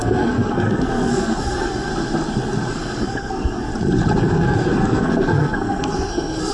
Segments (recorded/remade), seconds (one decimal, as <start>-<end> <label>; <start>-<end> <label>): 0.0-1.9 remade; 1.9-2.7 recorded; 2.7-3.7 remade; 3.7-4.2 recorded; 4.2-6.5 remade